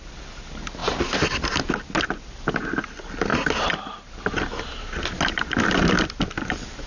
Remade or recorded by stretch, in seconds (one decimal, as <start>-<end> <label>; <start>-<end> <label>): 0.0-6.9 recorded